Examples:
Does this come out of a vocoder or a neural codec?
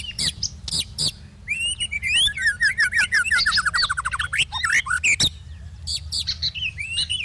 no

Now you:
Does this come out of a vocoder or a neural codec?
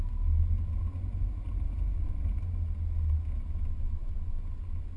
no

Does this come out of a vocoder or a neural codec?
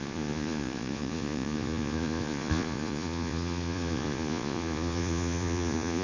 yes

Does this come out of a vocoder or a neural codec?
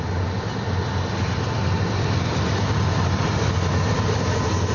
no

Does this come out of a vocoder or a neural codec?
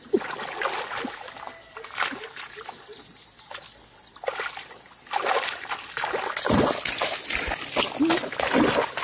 no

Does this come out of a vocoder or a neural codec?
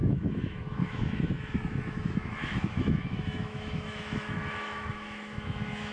yes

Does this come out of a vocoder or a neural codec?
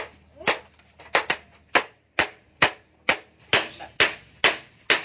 no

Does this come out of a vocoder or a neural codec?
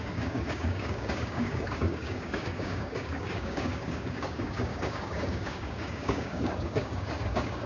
yes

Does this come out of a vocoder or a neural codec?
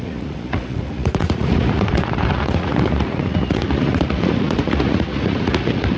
yes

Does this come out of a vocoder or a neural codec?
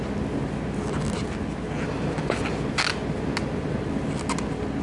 no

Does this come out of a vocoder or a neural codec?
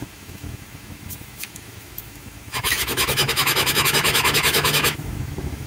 yes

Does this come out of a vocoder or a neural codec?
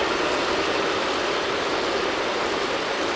no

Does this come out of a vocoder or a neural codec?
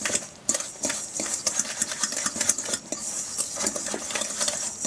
no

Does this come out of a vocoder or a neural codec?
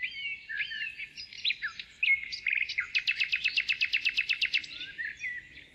no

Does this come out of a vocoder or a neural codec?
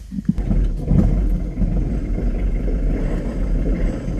no